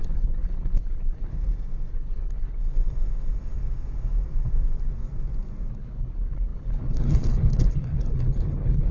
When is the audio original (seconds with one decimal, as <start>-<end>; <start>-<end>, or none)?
1.3-1.9; 2.6-5.7